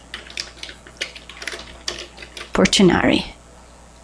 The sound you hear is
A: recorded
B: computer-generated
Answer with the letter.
A